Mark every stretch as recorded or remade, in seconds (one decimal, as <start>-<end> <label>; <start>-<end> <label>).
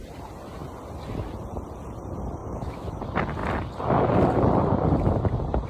0.0-2.4 recorded; 2.4-3.0 remade; 3.0-5.7 recorded